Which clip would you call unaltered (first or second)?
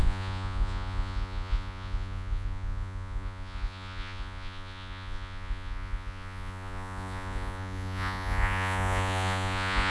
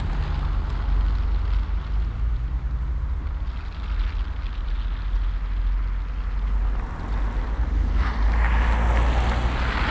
second